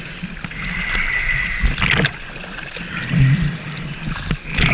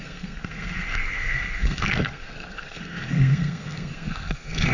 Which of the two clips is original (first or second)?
first